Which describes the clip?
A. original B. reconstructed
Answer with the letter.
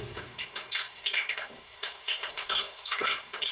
B